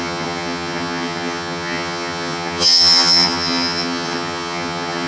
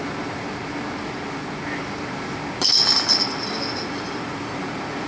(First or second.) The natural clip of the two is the second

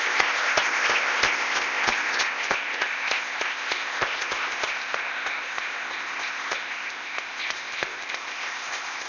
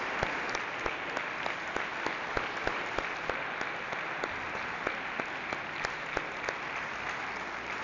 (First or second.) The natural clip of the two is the second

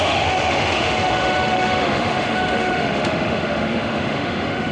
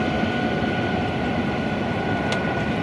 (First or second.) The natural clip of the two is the second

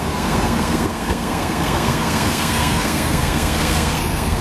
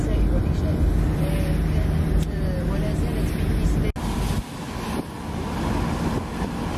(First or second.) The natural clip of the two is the second